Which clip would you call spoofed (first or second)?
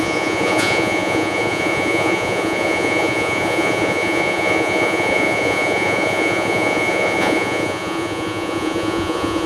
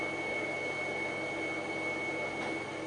first